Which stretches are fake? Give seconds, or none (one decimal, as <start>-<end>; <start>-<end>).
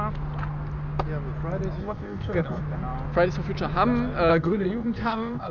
1.8-2.6; 4.3-5.5